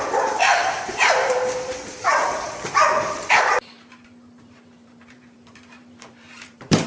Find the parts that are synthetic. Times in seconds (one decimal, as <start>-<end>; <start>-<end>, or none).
0.0-6.9